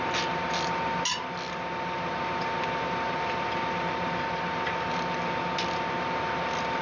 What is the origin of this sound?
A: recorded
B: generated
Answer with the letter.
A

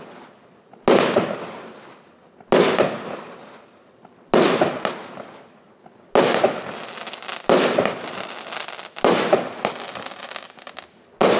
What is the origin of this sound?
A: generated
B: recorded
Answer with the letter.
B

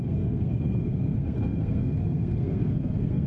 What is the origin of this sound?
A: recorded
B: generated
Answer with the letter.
B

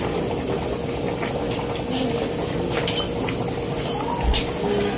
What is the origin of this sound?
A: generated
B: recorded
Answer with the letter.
B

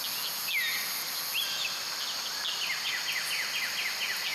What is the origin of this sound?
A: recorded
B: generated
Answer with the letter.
A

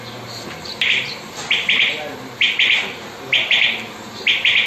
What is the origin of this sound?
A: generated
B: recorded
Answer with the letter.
B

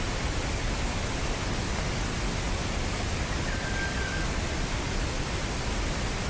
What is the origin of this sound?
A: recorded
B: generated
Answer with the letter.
A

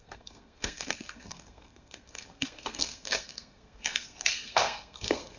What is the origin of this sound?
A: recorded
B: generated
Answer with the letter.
B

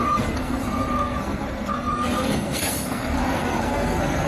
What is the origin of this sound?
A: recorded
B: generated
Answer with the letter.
B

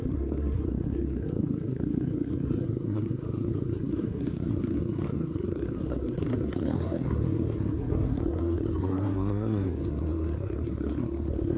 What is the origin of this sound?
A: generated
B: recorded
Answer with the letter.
A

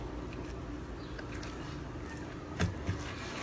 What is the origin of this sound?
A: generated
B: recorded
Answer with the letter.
B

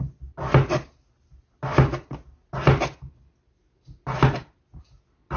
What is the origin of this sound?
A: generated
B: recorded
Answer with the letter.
B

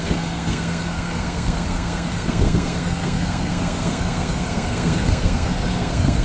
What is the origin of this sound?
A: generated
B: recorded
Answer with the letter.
A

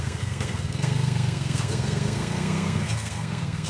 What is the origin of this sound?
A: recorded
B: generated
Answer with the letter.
B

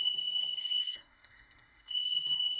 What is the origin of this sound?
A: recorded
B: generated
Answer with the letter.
B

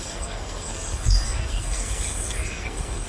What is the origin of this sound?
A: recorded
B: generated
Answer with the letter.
B